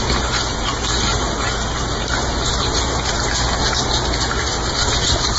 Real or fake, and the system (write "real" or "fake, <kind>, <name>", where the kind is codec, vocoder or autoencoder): fake, vocoder, BigVGAN v2